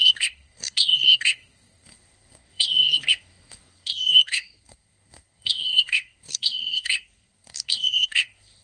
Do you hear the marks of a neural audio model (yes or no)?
yes